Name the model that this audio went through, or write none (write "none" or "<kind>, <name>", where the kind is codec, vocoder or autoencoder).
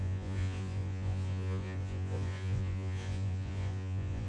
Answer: vocoder, Vocos